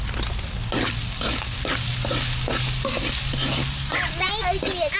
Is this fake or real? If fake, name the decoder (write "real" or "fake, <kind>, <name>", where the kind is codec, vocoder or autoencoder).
real